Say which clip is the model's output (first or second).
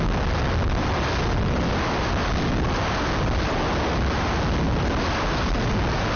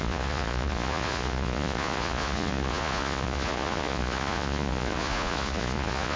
second